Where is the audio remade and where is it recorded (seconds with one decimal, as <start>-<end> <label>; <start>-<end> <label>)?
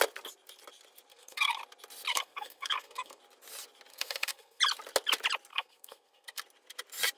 0.0-1.1 recorded; 1.1-1.6 remade; 1.6-2.1 recorded; 2.1-3.2 remade; 3.2-3.9 recorded; 3.9-4.6 remade; 4.6-5.5 recorded; 5.5-6.4 remade; 6.4-7.2 recorded